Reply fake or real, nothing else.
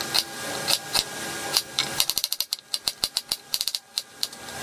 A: real